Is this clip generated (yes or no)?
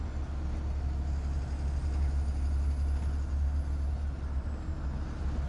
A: no